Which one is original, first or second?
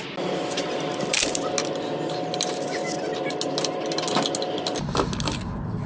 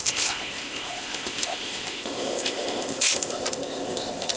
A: first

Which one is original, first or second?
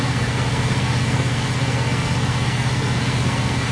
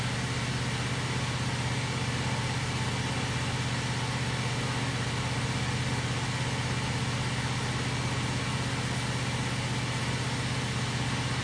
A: second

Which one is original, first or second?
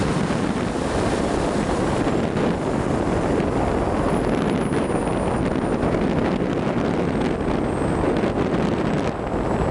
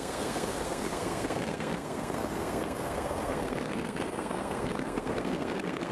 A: first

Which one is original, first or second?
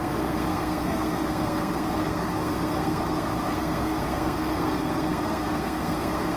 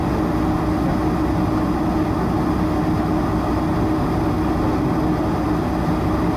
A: second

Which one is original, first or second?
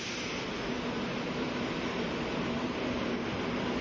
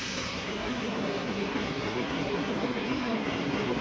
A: first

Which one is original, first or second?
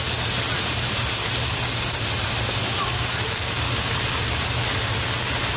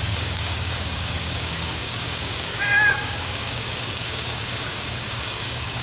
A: first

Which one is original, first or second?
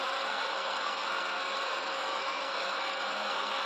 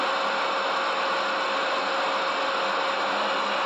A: second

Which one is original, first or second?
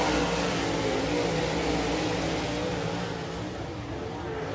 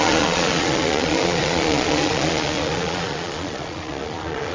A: first